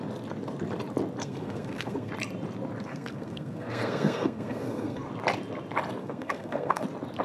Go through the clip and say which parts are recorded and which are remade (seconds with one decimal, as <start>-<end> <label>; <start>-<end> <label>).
0.0-1.2 recorded; 1.2-2.1 remade; 2.1-2.9 recorded; 2.9-5.1 remade; 5.1-6.0 recorded; 6.0-6.8 remade; 6.8-7.2 recorded